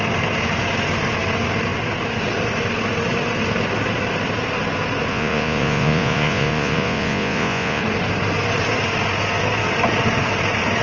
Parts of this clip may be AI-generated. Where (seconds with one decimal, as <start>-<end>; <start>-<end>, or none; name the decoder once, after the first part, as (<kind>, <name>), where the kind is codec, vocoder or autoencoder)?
5.1-7.8 (vocoder, Vocos)